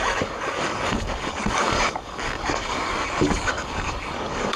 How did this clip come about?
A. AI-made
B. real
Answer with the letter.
A